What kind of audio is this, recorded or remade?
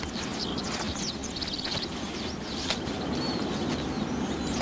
recorded